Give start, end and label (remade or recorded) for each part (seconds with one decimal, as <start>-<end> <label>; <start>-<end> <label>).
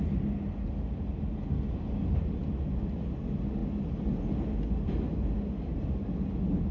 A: 0.0-6.7 recorded